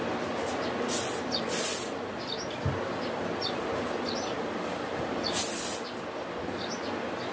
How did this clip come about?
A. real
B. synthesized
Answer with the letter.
A